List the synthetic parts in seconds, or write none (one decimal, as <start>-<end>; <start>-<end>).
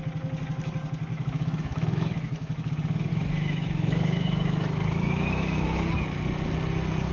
1.1-2.7; 3.1-5.9